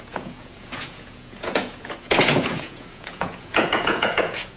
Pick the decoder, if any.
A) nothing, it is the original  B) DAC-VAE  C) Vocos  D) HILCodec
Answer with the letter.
C